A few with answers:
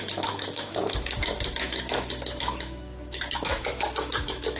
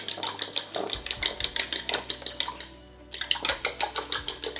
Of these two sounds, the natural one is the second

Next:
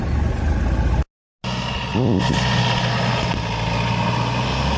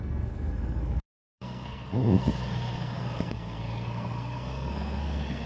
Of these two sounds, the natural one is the first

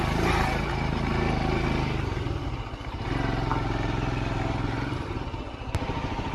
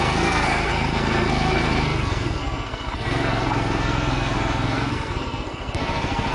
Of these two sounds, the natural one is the first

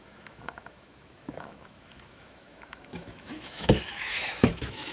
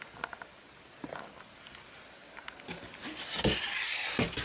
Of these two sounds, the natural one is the second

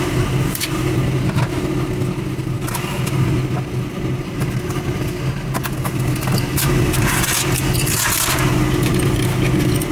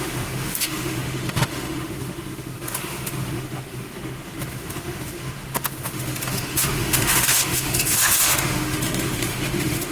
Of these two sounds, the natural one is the first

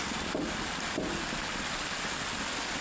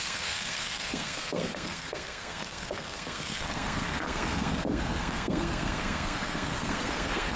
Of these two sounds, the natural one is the first